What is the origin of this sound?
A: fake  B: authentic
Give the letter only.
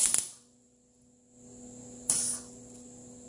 B